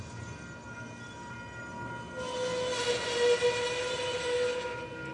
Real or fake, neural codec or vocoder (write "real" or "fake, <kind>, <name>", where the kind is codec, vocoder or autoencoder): real